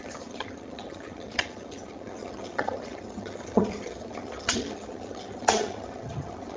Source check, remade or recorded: remade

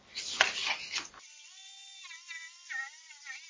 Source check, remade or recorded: recorded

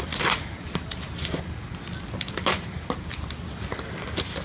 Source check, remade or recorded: recorded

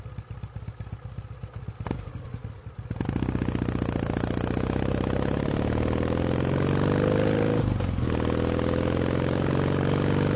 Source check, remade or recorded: recorded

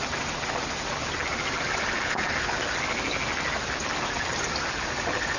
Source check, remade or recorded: recorded